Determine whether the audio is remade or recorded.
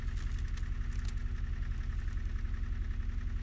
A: recorded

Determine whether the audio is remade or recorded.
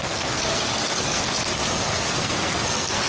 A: remade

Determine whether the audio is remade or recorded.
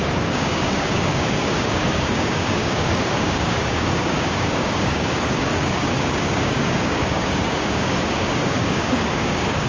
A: remade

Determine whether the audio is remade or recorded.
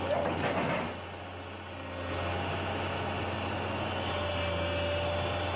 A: recorded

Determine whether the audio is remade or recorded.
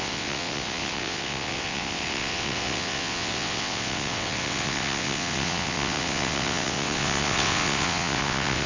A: remade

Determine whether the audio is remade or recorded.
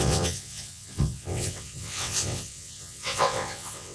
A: remade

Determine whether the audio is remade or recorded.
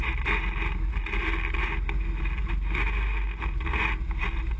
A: recorded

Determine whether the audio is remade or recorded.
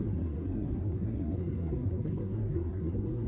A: remade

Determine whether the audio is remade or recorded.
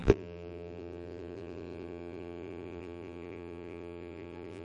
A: remade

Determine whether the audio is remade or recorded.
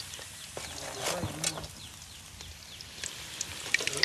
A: recorded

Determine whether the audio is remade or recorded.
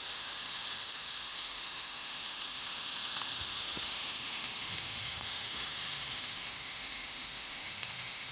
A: remade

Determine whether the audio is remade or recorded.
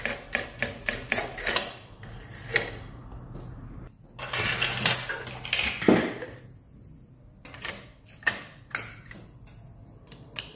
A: recorded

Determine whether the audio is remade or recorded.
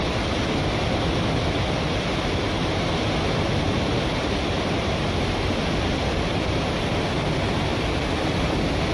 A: recorded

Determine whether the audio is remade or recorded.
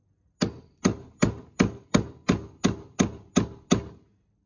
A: recorded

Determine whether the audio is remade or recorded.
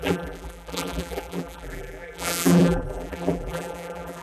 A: remade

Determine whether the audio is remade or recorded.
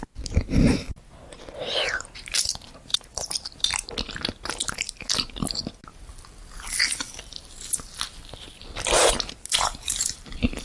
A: recorded